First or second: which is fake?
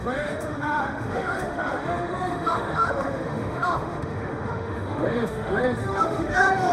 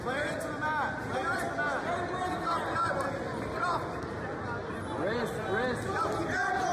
first